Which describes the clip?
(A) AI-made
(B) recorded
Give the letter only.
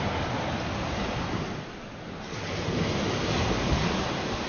B